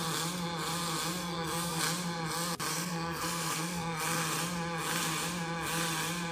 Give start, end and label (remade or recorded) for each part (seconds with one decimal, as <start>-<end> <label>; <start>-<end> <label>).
0.0-1.2 recorded; 1.2-1.8 remade; 1.8-2.7 recorded; 2.7-4.0 remade; 4.0-6.3 recorded